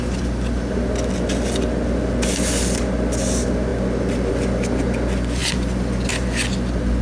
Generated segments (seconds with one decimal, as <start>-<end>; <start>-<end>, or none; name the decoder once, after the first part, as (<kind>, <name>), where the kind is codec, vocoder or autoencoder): none